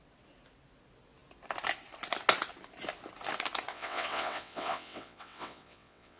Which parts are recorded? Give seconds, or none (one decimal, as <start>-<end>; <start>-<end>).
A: 0.0-3.7